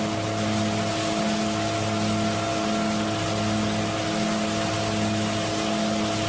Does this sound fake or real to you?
real